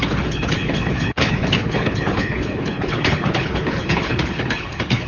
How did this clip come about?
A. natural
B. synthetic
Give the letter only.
B